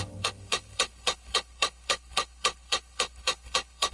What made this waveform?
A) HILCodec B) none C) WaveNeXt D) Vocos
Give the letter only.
A